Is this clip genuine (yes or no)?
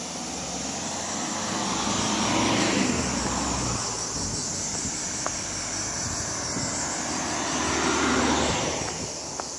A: yes